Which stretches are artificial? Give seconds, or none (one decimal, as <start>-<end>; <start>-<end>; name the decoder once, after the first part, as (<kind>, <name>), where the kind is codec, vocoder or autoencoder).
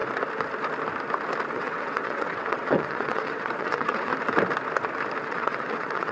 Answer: 1.5-4.1 (vocoder, WaveNeXt); 5.2-6.1